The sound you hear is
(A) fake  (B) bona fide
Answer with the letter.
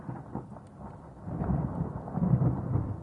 B